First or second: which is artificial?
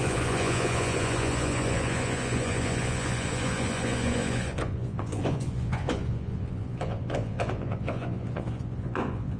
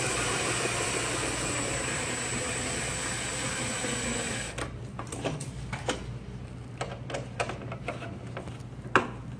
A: first